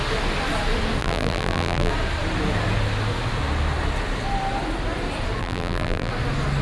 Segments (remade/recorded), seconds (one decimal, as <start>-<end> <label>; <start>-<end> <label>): 0.0-1.0 recorded; 1.0-1.9 remade; 1.9-5.4 recorded; 5.4-6.1 remade; 6.1-6.6 recorded